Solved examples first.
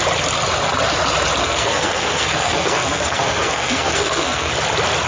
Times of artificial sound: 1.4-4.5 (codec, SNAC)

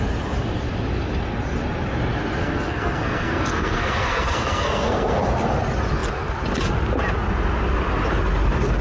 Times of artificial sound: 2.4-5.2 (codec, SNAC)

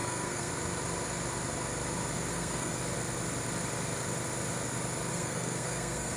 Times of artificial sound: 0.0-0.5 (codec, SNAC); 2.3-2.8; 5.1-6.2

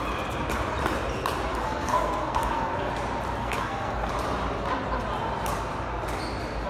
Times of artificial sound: 1.5-2.9 (codec, SNAC); 3.4-4.1

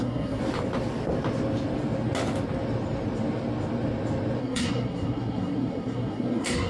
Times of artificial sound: 0.0-0.4 (codec, SNAC); 4.4-6.7